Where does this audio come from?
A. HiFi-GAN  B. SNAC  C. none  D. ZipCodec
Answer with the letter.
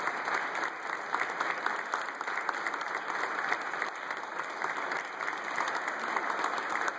C